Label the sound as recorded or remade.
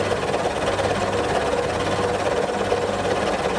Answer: recorded